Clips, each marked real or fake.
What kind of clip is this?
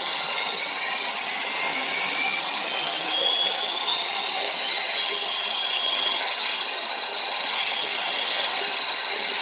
fake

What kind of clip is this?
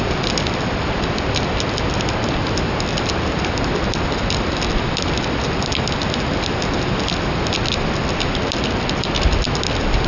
real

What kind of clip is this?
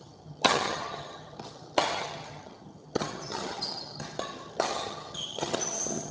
fake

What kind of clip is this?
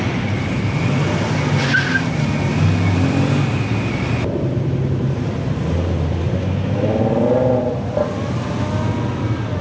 real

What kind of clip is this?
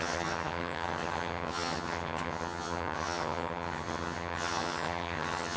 fake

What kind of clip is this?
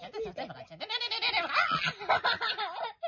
real